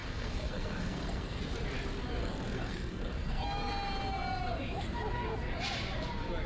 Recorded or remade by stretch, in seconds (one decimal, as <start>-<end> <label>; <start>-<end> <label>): 0.0-1.4 remade; 1.4-2.2 recorded; 2.2-3.7 remade; 3.7-6.5 recorded